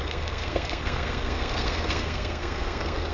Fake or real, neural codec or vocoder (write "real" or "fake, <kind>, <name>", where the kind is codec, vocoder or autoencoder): fake, codec, SNAC